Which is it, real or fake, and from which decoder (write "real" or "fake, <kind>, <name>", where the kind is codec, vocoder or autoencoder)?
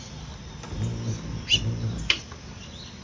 real